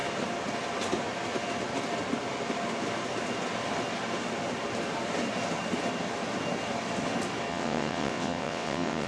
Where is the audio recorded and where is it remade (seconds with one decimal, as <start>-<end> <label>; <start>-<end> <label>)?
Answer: 0.0-7.5 recorded; 7.5-9.1 remade